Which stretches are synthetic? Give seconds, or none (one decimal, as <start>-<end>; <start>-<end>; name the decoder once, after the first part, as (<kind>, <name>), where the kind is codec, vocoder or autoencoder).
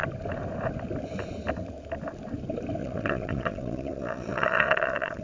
2.8-5.2 (vocoder, Vocos)